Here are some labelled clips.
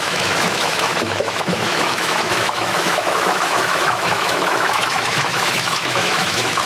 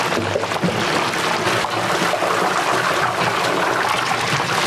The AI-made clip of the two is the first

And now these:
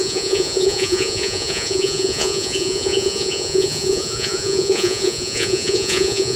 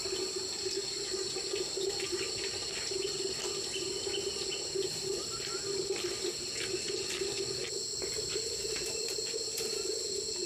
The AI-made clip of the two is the first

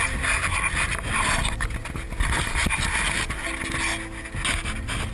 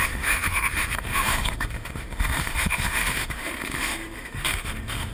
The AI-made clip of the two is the second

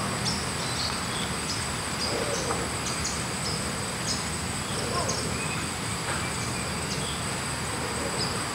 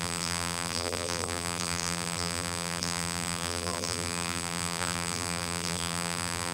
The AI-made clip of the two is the second